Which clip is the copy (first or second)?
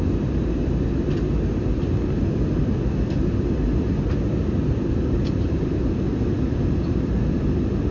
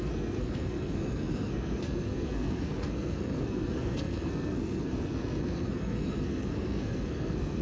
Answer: second